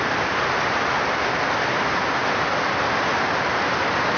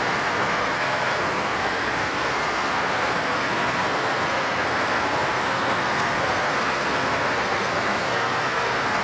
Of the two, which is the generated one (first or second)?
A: second